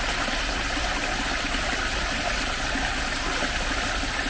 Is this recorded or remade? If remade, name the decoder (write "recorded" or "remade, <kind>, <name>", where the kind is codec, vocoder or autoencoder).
recorded